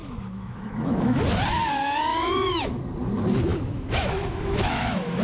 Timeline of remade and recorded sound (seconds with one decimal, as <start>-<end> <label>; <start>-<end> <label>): 0.0-1.2 remade; 1.2-2.1 recorded; 2.1-2.8 remade; 2.8-3.5 recorded; 3.5-5.2 remade